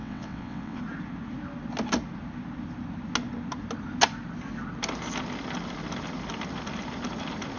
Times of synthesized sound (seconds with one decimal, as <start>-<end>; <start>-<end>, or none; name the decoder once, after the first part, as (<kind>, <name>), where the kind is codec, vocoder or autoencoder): 0.0-0.8 (vocoder, WaveNeXt)